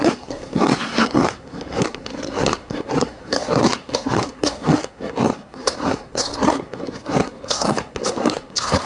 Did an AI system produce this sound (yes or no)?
yes